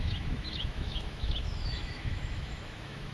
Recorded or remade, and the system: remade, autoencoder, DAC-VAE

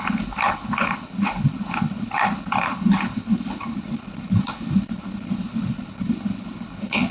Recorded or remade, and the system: remade, codec, HILCodec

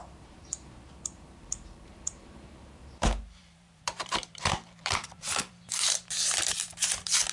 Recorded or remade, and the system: remade, vocoder, BigVGAN v2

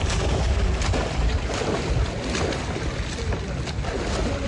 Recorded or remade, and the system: recorded